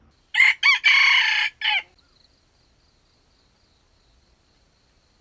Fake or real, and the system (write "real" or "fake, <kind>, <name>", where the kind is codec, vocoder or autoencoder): real